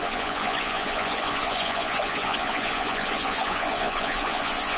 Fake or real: fake